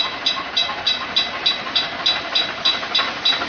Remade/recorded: remade